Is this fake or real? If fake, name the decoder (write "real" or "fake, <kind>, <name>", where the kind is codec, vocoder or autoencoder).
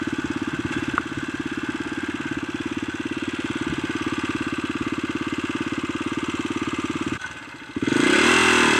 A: real